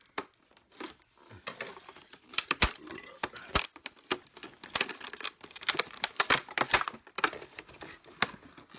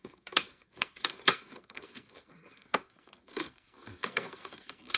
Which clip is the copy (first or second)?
second